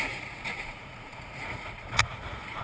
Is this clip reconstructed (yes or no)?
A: yes